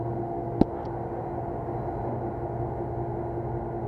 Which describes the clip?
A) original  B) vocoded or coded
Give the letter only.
A